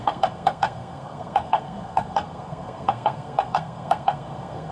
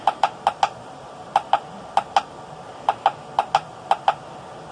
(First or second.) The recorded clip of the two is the second